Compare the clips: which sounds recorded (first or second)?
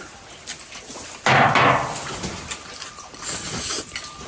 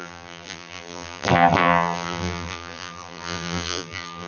first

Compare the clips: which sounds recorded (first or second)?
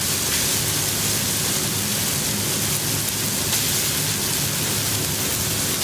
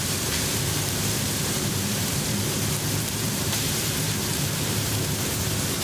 first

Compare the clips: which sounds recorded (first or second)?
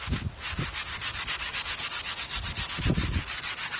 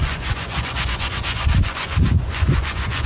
first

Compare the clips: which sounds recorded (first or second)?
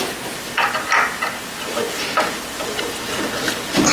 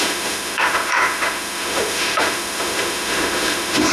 first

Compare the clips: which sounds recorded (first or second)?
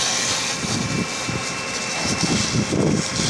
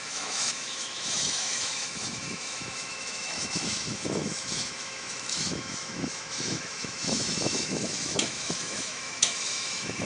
first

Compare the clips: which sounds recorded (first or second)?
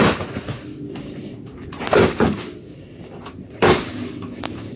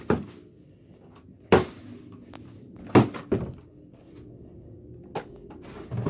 second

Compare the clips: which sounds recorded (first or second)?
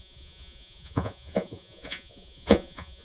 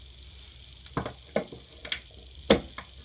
second